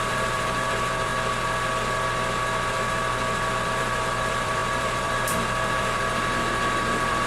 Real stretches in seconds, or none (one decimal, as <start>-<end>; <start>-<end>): 1.1-2.7